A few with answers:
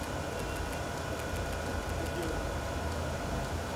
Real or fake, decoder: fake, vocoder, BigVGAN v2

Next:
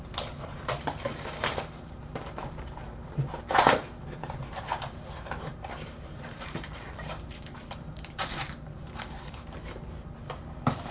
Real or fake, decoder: fake, vocoder, BigVGAN v2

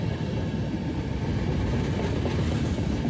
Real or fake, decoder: real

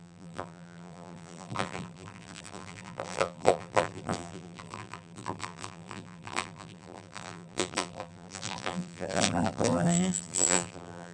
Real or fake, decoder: fake, vocoder, BigVGAN v2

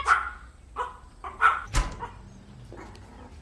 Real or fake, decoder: real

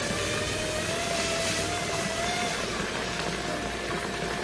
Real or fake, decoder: real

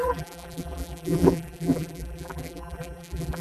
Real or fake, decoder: fake, vocoder, BigVGAN v2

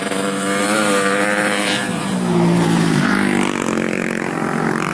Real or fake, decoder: fake, vocoder, BigVGAN v2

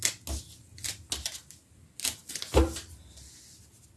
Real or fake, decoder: real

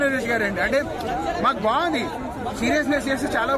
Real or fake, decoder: real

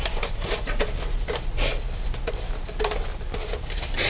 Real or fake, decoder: real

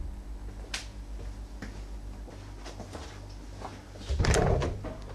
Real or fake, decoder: real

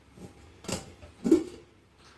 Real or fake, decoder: real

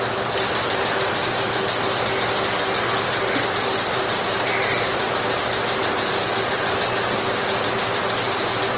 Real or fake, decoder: real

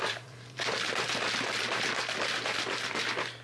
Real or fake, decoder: fake, vocoder, BigVGAN v2